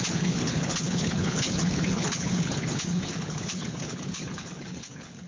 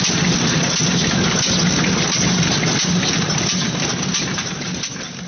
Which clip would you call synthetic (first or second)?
first